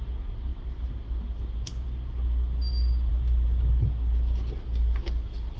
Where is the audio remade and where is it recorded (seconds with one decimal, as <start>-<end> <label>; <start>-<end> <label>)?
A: 0.0-0.5 recorded; 0.5-1.0 remade; 1.0-5.6 recorded

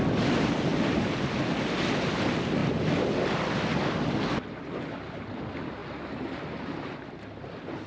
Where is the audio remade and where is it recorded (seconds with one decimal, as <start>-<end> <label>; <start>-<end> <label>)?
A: 0.0-7.9 recorded